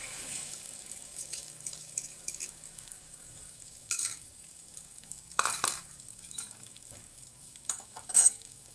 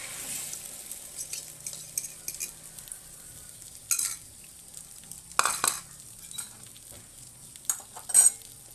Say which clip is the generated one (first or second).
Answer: first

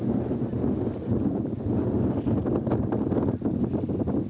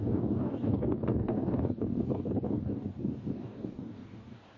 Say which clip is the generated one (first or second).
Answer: second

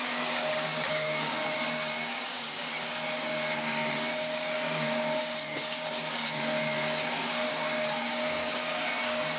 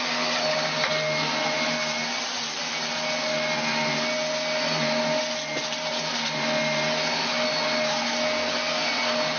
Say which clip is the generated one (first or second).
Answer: first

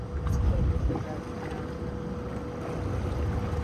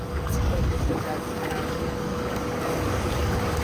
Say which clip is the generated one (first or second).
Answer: second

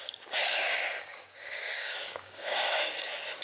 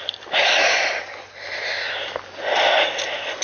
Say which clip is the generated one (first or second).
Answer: first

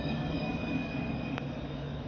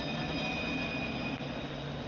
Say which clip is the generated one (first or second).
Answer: first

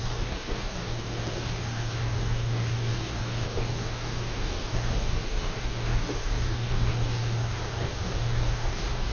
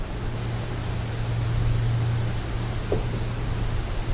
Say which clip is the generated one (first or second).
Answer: first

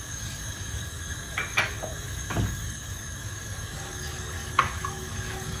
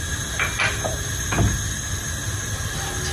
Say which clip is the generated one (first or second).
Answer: first